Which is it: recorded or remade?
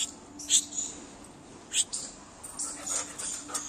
recorded